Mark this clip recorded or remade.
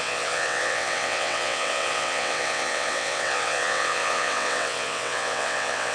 remade